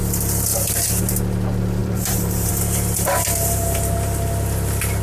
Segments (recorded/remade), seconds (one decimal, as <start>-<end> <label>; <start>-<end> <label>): 0.0-0.5 recorded; 0.5-1.0 remade; 1.0-1.8 recorded; 1.8-2.5 remade; 2.5-5.0 recorded